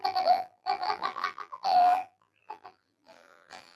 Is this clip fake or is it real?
fake